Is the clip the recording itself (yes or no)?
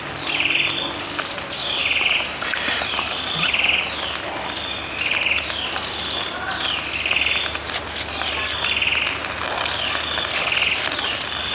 yes